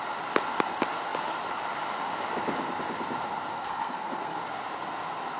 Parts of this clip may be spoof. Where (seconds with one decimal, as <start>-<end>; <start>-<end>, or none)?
3.5-4.3